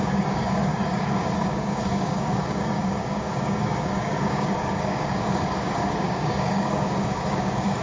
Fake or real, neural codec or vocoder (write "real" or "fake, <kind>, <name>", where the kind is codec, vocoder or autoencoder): fake, codec, DAC